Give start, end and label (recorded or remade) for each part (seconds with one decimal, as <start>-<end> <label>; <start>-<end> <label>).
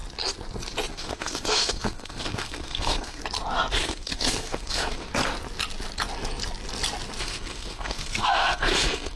0.0-0.9 recorded; 0.9-3.2 remade; 3.2-3.7 recorded; 3.7-5.1 remade; 5.1-7.2 recorded; 7.2-9.2 remade